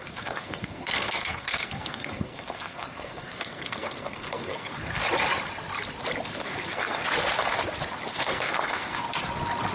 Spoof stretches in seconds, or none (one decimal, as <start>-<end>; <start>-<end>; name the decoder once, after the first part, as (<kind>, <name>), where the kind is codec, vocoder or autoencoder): 0.0-5.0 (codec, SNAC); 6.3-7.0; 8.1-9.1